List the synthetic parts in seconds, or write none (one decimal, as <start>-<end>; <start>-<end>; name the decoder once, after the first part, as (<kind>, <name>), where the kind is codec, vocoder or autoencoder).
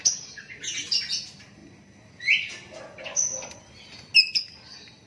none